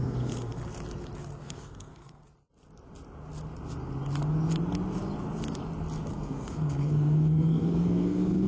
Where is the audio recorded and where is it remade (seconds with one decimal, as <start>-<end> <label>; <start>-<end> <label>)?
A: 0.0-0.6 remade; 0.6-1.4 recorded; 1.4-2.2 remade; 2.2-6.1 recorded; 6.1-8.5 remade